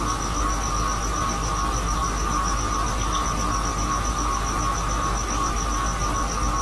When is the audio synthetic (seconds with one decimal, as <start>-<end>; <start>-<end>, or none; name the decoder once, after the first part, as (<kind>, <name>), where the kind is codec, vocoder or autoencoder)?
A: none

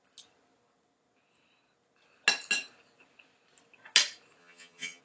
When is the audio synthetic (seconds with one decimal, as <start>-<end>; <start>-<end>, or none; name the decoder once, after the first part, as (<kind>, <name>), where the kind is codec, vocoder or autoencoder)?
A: 4.4-5.0 (vocoder, HiFi-GAN)

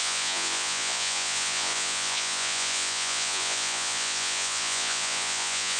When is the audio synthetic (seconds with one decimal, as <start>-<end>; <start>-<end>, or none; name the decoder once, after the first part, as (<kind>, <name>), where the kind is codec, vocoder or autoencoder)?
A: 0.0-5.8 (vocoder, Vocos)

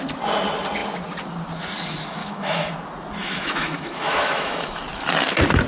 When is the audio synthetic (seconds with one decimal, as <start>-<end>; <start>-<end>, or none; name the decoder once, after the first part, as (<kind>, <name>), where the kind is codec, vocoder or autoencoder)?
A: 2.2-2.7 (autoencoder, DAC-VAE); 3.2-4.8

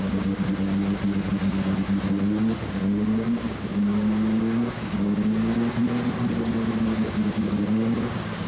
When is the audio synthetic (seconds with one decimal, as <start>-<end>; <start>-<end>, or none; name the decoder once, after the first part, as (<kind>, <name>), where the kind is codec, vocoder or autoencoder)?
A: 0.0-0.5 (codec, DAC); 2.8-5.8; 6.7-8.5

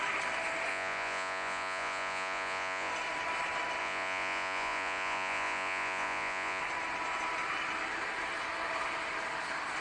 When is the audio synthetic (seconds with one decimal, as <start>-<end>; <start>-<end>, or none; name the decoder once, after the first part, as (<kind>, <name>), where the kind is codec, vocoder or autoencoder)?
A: 0.7-2.9 (vocoder, Vocos); 3.8-6.6

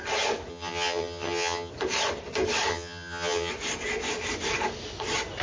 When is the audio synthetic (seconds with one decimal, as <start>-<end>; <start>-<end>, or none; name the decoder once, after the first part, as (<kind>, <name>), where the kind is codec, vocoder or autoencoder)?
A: 0.5-1.7 (vocoder, HiFi-GAN); 2.7-3.5

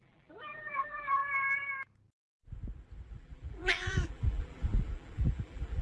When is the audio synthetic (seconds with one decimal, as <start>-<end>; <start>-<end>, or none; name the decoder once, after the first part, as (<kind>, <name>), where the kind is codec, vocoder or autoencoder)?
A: 0.0-1.2 (vocoder, BigVGAN v2); 3.1-5.8